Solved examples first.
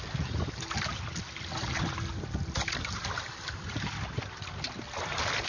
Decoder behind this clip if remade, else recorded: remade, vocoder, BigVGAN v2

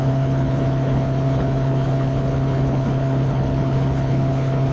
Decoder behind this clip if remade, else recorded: remade, codec, HILCodec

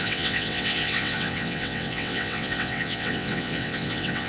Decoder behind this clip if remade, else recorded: remade, vocoder, WaveNeXt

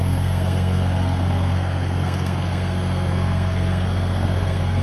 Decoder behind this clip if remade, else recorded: remade, codec, SNAC